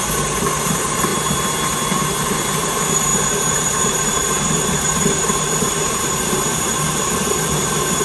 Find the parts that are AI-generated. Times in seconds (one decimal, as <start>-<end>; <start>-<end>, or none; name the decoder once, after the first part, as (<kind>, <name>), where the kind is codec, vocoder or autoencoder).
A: 0.0-1.1 (vocoder, BigVGAN v2); 2.2-8.0